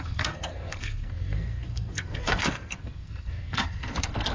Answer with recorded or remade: remade